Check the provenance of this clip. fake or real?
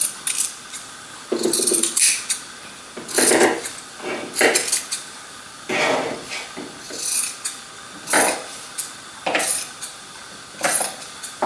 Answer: real